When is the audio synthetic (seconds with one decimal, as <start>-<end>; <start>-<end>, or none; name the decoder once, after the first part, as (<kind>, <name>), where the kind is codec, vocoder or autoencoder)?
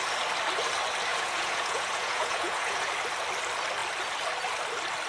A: 1.1-2.9 (vocoder, Vocos)